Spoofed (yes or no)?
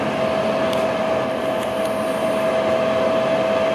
no